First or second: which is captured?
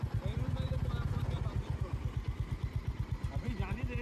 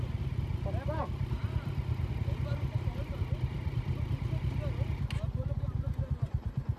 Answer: second